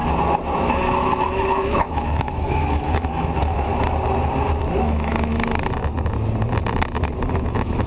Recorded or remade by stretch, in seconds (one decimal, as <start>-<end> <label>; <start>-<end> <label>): 0.0-0.6 recorded; 0.6-3.7 remade; 3.7-4.8 recorded; 4.8-5.3 remade; 5.3-7.3 recorded; 7.3-7.9 remade